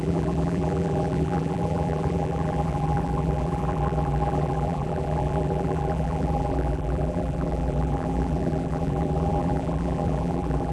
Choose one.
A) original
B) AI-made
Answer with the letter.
B